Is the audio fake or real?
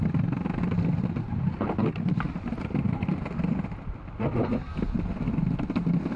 real